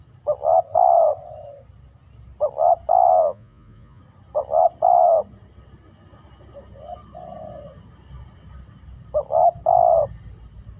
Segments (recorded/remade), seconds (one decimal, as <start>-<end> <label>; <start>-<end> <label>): 0.0-3.1 recorded; 3.1-4.0 remade; 4.0-10.8 recorded